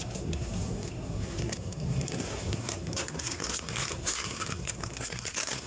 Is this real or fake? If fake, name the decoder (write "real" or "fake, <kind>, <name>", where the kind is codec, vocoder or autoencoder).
fake, codec, SNAC